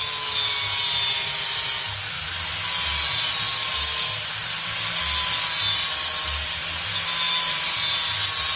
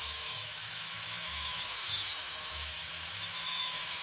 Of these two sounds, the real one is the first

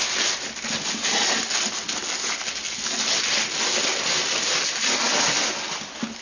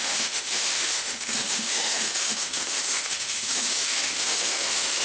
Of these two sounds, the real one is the first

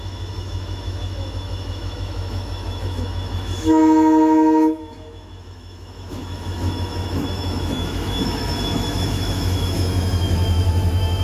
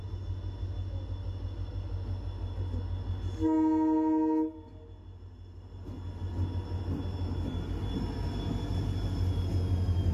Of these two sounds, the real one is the second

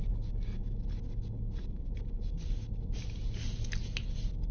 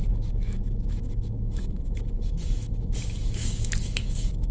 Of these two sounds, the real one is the first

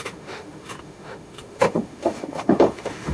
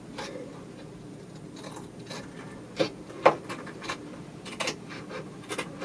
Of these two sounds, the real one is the second